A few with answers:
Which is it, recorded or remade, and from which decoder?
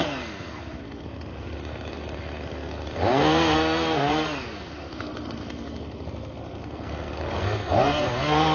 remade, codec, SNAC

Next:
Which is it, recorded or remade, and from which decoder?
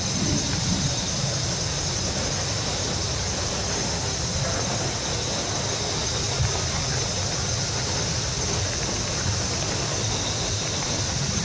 recorded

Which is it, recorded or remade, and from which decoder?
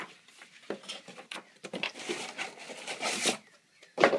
recorded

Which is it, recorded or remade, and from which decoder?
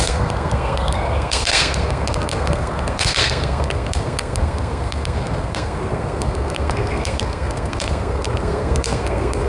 remade, codec, SNAC